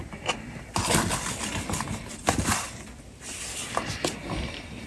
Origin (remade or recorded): recorded